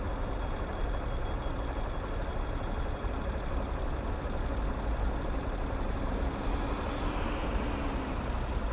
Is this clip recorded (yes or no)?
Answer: yes